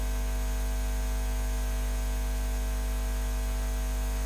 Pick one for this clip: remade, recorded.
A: recorded